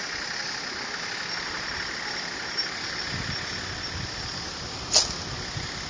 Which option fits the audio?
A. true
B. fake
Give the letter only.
A